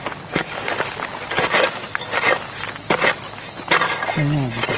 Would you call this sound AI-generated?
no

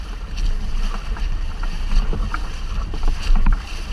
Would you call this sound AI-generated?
yes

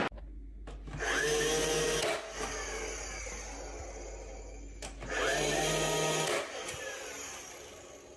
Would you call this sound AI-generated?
no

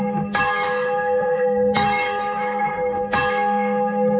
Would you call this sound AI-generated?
yes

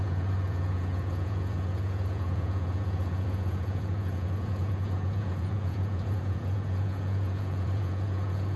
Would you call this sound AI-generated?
yes